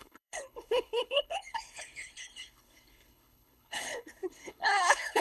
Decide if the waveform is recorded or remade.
remade